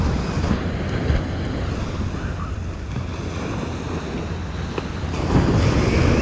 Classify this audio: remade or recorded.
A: recorded